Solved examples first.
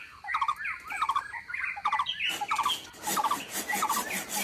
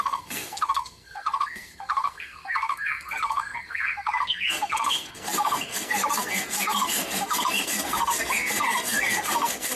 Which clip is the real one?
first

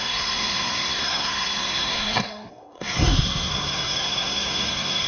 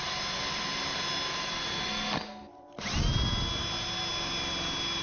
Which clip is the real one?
second